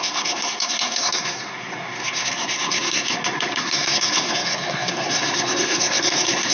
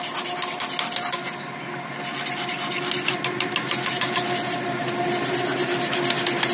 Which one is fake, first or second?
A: first